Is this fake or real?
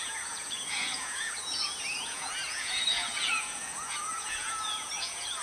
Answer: fake